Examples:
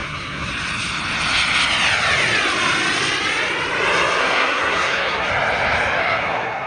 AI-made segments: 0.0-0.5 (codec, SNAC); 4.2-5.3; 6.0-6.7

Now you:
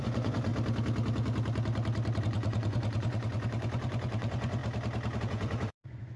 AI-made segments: 0.0-0.5 (vocoder, Vocos); 2.2-4.6; 5.2-6.2